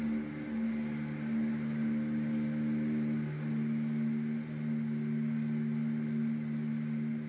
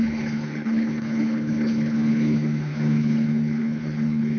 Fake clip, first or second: second